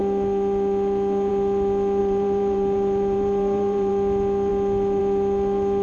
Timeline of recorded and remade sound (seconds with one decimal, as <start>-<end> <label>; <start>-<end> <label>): 0.0-2.0 recorded; 2.0-3.9 remade; 3.9-5.8 recorded